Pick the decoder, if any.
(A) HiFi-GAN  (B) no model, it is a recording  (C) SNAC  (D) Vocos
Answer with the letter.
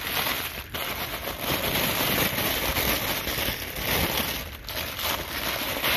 B